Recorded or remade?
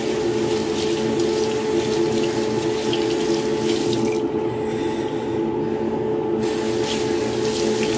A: recorded